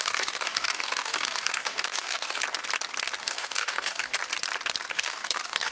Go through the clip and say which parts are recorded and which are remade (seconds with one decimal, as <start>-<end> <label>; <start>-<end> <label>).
0.0-2.4 remade; 2.4-3.2 recorded; 3.2-4.2 remade; 4.2-4.9 recorded; 4.9-5.7 remade